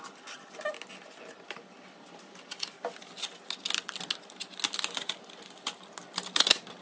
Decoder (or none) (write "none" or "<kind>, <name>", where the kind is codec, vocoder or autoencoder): none